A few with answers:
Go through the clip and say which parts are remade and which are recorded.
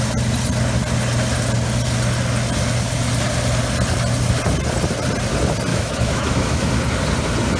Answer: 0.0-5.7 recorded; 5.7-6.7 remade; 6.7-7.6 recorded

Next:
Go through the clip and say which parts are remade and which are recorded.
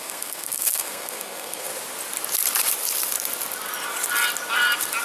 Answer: 0.0-1.7 remade; 1.7-5.0 recorded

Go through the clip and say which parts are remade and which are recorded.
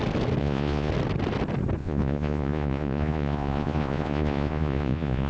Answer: 0.0-0.4 recorded; 0.4-0.9 remade; 0.9-1.8 recorded; 1.8-5.3 remade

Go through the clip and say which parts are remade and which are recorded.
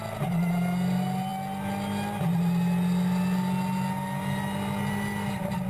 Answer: 0.0-5.7 recorded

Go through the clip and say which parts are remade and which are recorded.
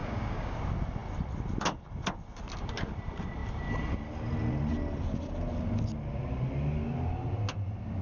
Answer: 0.0-0.6 remade; 0.6-8.0 recorded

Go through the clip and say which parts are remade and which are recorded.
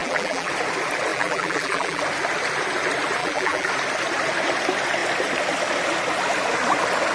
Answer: 0.0-0.5 remade; 0.5-1.1 recorded; 1.1-2.0 remade; 2.0-3.2 recorded; 3.2-3.7 remade; 3.7-7.1 recorded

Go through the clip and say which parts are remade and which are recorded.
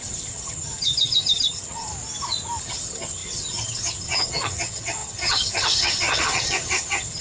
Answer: 0.0-1.9 remade; 1.9-2.6 recorded; 2.6-7.2 remade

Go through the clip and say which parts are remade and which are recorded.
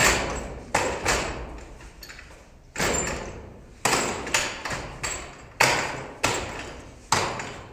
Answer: 0.0-7.7 recorded